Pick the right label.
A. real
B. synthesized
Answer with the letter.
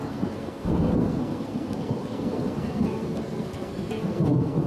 B